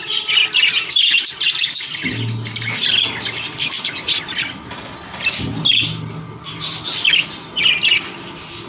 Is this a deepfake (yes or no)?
no